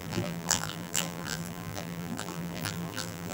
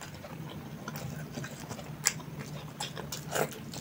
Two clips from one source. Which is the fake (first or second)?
first